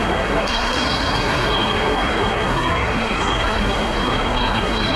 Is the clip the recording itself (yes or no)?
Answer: no